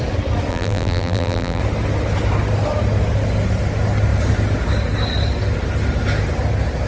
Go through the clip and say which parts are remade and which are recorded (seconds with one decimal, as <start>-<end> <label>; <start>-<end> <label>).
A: 0.0-0.5 recorded; 0.5-1.6 remade; 1.6-6.9 recorded